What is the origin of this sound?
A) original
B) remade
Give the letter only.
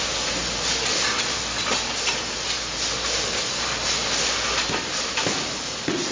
A